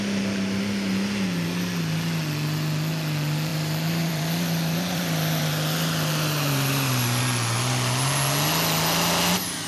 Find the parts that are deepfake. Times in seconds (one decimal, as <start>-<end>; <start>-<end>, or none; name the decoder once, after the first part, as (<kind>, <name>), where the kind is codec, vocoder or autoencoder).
3.5-7.2 (vocoder, BigVGAN v2)